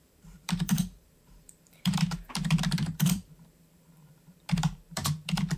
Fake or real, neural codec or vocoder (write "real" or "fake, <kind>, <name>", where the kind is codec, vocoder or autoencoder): fake, vocoder, BigVGAN v2